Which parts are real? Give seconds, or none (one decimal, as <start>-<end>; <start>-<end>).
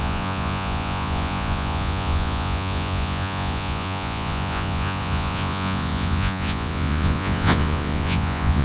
none